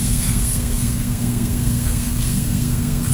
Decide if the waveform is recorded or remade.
remade